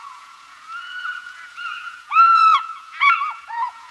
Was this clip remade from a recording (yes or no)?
yes